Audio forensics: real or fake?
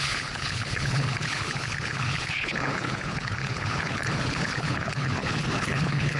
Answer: fake